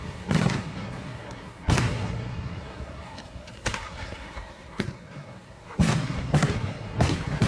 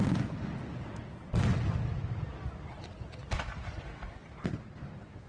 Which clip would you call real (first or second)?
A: second